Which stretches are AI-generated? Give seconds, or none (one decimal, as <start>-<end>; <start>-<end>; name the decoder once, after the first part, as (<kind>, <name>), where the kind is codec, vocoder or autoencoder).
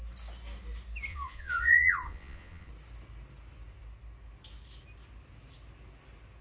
1.1-2.7 (vocoder, Vocos)